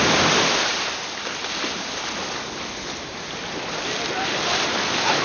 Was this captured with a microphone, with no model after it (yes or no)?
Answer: yes